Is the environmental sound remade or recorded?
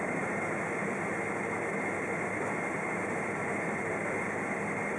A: recorded